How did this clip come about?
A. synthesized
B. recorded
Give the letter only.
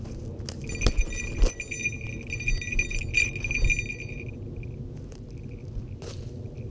B